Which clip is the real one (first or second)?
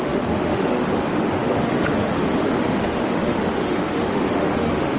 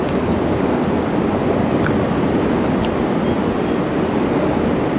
second